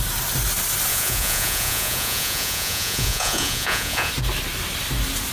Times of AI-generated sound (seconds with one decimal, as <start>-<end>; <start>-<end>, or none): 0.9-4.1